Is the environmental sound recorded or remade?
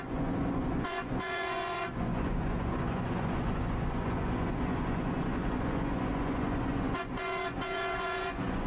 remade